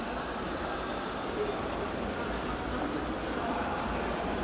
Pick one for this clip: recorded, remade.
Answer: recorded